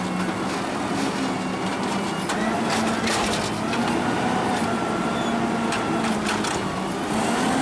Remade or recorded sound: recorded